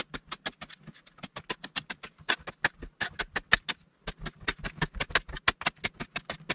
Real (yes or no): yes